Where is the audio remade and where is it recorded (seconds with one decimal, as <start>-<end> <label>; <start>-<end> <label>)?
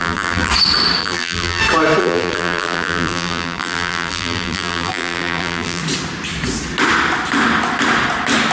0.0-0.5 remade; 0.5-1.0 recorded; 1.0-1.6 remade; 1.6-2.0 recorded; 2.0-5.8 remade; 5.8-8.5 recorded